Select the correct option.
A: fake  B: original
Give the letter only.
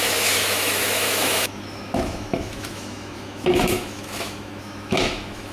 A